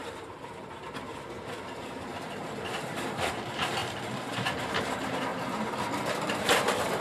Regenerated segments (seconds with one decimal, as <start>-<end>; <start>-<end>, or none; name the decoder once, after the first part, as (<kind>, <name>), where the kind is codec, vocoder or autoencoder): 0.0-5.3 (vocoder, BigVGAN v2); 6.3-7.0